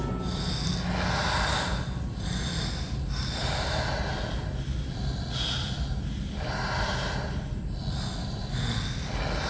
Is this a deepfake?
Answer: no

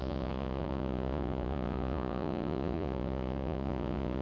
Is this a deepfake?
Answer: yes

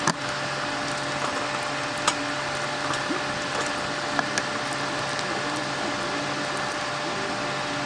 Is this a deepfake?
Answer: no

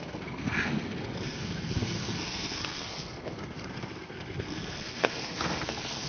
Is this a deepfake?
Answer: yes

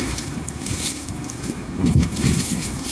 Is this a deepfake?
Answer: yes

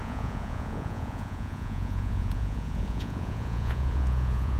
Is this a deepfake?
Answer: yes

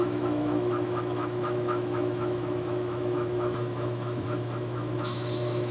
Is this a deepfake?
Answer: yes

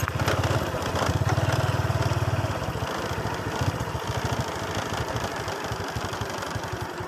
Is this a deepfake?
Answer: no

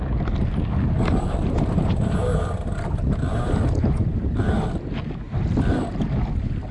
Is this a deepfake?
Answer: no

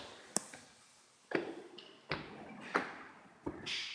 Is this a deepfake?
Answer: no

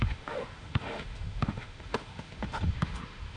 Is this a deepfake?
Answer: yes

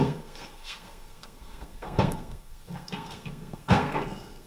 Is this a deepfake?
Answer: yes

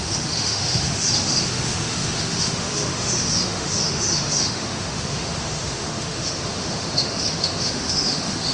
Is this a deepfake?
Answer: yes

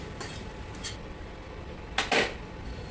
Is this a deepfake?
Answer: yes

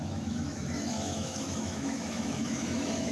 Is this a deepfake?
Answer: yes